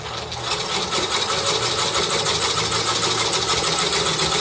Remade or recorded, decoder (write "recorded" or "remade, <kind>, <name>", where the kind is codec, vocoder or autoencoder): recorded